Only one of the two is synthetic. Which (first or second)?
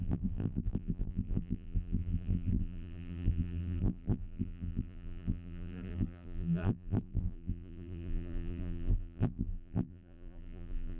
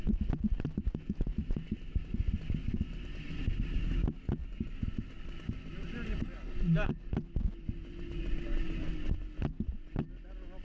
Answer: first